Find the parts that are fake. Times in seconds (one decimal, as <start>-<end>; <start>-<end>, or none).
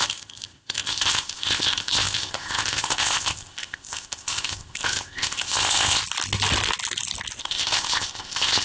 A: 0.0-6.0; 7.4-8.6